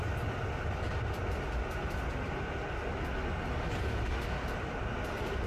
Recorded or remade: recorded